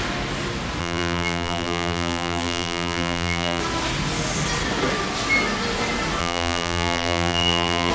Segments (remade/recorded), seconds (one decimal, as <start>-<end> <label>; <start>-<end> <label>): 0.0-0.8 recorded; 0.8-3.6 remade; 3.6-6.2 recorded; 6.2-7.9 remade